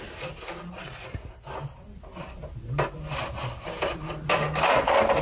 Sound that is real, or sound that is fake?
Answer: real